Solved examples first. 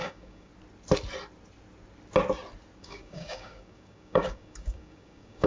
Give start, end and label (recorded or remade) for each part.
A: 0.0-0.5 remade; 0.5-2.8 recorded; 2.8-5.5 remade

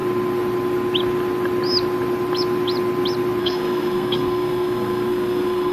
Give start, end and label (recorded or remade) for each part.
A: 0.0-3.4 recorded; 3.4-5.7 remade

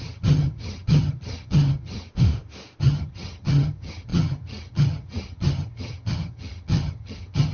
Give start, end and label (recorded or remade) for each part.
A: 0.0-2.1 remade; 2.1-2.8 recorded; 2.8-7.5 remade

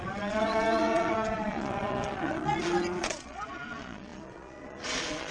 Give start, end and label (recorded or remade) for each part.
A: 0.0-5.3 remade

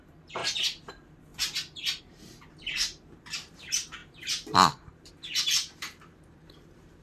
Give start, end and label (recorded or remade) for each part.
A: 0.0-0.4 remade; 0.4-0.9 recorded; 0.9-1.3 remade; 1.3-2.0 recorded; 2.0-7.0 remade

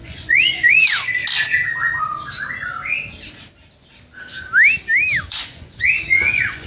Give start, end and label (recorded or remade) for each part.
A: 0.0-1.2 remade; 1.2-5.2 recorded; 5.2-6.7 remade